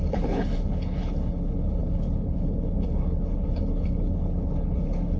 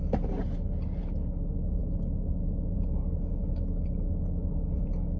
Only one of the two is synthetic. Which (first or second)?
first